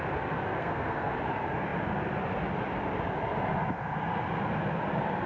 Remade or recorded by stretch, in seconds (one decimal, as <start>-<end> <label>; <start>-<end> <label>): 0.0-0.6 recorded; 0.6-1.1 remade; 1.1-5.3 recorded

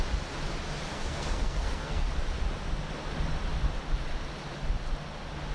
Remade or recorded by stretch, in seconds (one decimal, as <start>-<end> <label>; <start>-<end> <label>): 0.0-0.9 recorded; 0.9-2.1 remade; 2.1-5.5 recorded

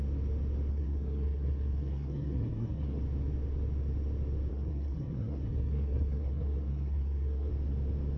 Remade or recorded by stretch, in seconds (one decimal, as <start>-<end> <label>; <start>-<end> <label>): 0.0-0.7 recorded; 0.7-3.0 remade; 3.0-4.5 recorded; 4.5-7.5 remade; 7.5-8.2 recorded

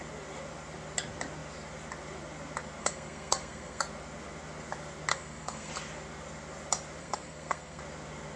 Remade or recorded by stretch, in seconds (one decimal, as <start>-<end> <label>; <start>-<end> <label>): 0.0-2.8 recorded; 2.8-3.8 remade; 3.8-5.1 recorded; 5.1-5.7 remade; 5.7-7.0 recorded; 7.0-7.8 remade; 7.8-8.4 recorded

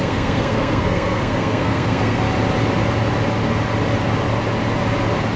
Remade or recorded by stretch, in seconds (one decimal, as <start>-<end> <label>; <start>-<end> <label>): 0.0-2.2 remade; 2.2-5.4 recorded

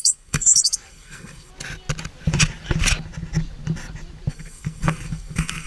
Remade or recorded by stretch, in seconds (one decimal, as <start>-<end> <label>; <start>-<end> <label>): 0.0-1.5 remade; 1.5-4.3 recorded; 4.3-5.7 remade

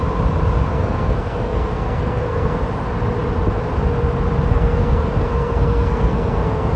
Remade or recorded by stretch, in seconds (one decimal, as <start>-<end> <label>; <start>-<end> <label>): 0.0-0.7 recorded; 0.7-2.6 remade; 2.6-4.5 recorded; 4.5-6.8 remade

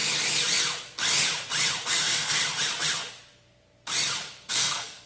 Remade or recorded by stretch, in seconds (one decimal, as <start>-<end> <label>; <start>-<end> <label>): 0.0-1.9 recorded; 1.9-2.4 remade; 2.4-4.5 recorded; 4.5-5.1 remade